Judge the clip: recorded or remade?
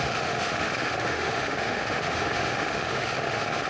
remade